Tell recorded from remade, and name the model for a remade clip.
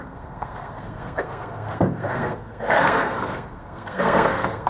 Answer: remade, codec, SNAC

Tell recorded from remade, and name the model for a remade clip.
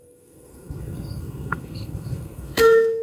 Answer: remade, codec, SNAC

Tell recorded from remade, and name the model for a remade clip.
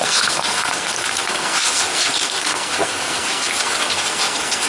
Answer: remade, codec, SNAC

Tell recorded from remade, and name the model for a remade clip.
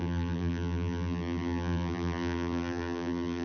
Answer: remade, vocoder, BigVGAN v2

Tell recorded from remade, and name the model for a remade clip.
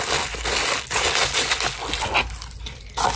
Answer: recorded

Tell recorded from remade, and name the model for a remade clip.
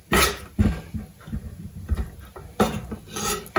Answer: recorded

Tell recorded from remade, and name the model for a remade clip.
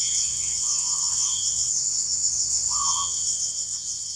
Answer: remade, vocoder, WaveNeXt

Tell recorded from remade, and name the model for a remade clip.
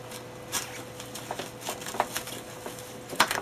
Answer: recorded